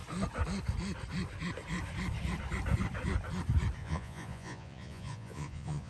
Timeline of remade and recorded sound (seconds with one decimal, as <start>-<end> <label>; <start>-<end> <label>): 0.0-3.8 recorded; 3.8-5.9 remade